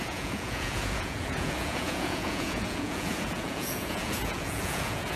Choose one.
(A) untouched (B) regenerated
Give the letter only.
B